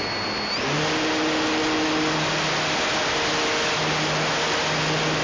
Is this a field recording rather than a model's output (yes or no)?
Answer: yes